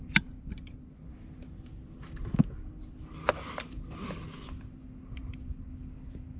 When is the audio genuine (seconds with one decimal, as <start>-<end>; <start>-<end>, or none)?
0.0-6.4